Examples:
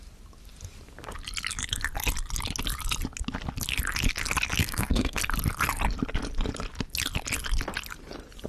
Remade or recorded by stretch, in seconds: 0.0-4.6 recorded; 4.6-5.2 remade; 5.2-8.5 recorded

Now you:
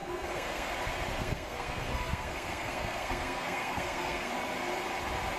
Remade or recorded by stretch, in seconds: 0.0-0.7 remade; 0.7-1.1 recorded; 1.1-4.3 remade; 4.3-5.4 recorded

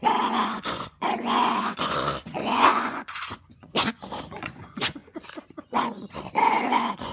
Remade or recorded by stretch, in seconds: 0.0-5.0 remade; 5.0-5.6 recorded; 5.6-7.1 remade

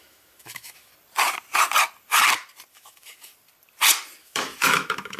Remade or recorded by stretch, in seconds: 0.0-0.9 remade; 0.9-2.7 recorded; 2.7-3.3 remade; 3.3-4.2 recorded; 4.2-5.2 remade

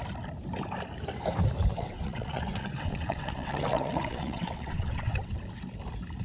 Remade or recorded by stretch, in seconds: 0.0-1.7 recorded; 1.7-5.4 remade; 5.4-6.2 recorded